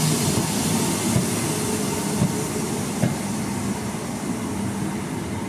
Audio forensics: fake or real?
real